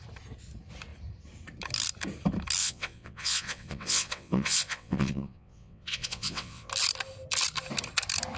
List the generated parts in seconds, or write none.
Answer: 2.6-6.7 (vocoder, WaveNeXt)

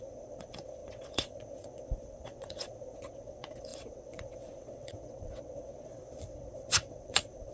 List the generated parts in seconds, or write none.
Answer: 0.0-7.5 (vocoder, WaveNeXt)